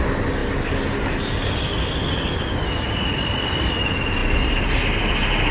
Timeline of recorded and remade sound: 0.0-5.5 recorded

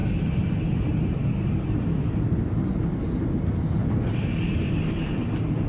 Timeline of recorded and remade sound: 0.0-5.7 recorded